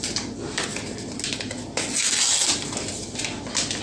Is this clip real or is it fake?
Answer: real